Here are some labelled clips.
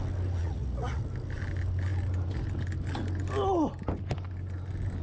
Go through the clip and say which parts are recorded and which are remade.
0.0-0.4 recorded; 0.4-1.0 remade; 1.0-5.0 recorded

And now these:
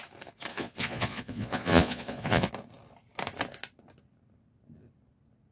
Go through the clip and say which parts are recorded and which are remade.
0.0-0.5 recorded; 0.5-2.5 remade; 2.5-5.5 recorded

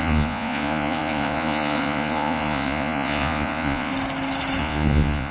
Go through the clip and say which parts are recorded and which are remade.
0.0-3.9 remade; 3.9-4.6 recorded; 4.6-5.3 remade